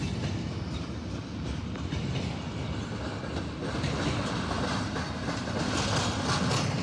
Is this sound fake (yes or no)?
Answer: no